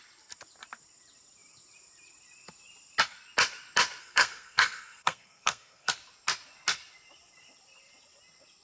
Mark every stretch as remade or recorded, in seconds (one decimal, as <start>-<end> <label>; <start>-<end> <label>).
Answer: 0.0-4.0 recorded; 4.0-5.9 remade; 5.9-8.6 recorded